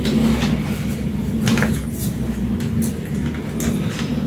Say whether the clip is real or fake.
real